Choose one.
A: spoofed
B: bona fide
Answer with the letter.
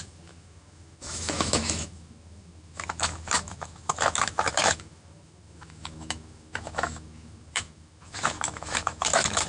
A